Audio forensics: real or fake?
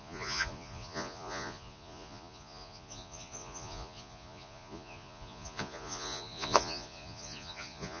fake